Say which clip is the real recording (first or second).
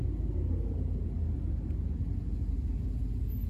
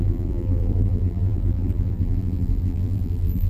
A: first